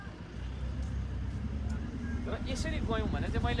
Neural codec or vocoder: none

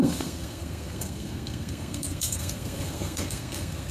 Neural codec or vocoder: codec, SNAC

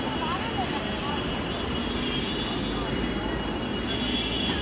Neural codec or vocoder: none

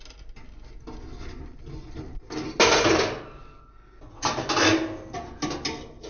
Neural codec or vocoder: none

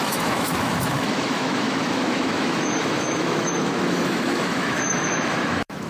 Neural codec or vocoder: autoencoder, DAC-VAE